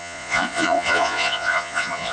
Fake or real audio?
fake